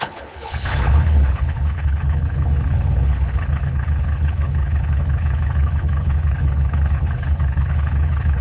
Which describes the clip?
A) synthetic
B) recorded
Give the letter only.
A